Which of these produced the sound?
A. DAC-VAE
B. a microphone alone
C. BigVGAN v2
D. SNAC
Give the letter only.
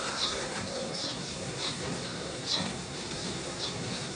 D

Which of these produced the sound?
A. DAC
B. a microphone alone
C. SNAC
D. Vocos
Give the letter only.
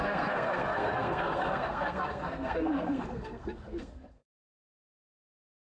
C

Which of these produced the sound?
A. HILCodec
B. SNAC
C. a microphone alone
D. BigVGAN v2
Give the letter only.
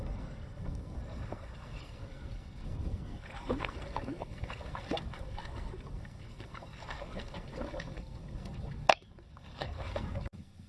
B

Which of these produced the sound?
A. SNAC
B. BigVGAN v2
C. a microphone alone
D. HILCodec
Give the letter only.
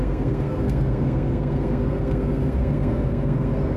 A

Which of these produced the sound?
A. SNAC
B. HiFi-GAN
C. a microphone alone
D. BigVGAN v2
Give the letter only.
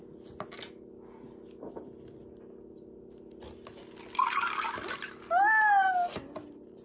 C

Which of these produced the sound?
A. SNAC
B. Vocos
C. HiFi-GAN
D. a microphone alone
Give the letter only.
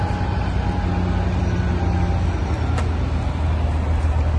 D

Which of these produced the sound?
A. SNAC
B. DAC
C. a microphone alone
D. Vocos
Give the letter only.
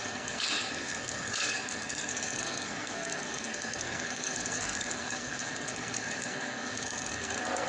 A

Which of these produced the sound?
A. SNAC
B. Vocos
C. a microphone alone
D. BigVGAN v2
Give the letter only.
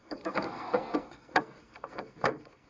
A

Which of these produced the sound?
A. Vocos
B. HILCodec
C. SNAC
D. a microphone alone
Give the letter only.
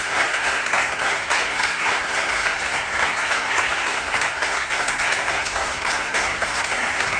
C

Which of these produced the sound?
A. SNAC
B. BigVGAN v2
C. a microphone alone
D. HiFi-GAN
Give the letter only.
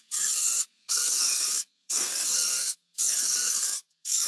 A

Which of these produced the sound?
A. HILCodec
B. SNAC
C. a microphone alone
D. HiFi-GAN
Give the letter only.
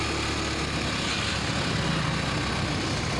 C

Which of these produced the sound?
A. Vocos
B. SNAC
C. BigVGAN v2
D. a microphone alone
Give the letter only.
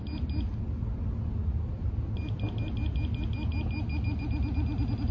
D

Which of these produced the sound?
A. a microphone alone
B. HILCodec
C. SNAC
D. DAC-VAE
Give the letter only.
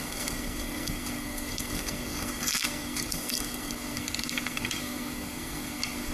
C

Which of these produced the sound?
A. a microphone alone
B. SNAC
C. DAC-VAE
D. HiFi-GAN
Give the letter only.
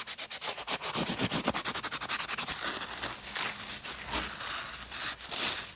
A